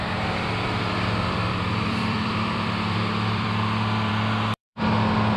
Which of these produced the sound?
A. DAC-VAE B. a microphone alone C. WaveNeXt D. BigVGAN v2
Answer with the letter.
D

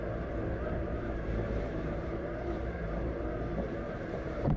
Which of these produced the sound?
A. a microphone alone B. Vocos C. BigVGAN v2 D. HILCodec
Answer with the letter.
C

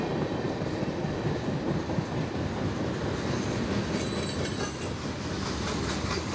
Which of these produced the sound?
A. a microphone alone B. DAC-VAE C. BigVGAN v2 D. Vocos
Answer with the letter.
A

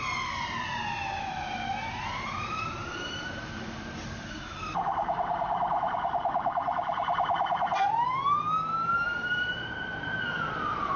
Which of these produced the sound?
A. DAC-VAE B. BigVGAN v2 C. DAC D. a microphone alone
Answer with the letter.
B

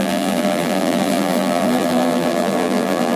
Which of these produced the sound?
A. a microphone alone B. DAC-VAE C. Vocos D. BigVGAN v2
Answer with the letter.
D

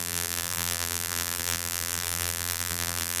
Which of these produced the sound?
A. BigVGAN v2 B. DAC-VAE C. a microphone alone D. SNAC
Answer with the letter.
A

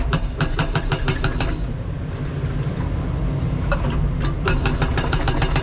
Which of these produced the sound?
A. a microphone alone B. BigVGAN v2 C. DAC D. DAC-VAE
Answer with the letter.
B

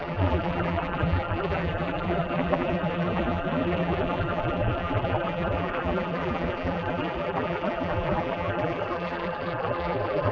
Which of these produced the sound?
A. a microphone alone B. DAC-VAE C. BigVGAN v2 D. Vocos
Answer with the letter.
C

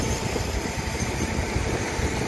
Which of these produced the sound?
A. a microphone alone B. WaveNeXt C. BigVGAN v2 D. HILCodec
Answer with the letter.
C